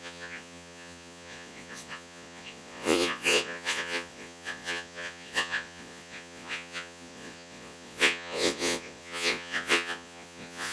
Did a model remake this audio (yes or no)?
yes